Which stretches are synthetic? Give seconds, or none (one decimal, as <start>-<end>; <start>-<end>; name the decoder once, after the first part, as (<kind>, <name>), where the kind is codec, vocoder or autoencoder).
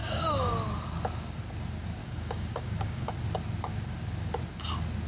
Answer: 0.0-0.5 (codec, DAC); 2.0-3.1